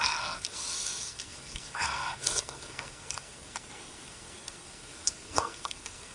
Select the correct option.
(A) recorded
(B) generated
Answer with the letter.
B